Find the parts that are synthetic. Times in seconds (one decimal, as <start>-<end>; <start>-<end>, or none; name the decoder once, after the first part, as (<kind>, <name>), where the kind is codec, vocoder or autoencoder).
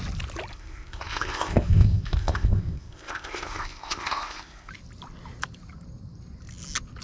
0.5-4.7 (codec, ZipCodec)